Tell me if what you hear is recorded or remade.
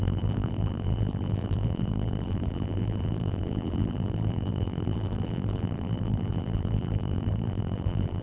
remade